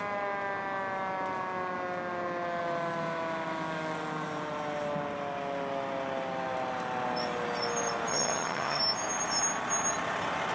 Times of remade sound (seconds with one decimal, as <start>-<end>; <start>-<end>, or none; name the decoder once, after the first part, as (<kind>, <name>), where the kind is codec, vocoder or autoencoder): 8.1-8.8 (vocoder, HiFi-GAN)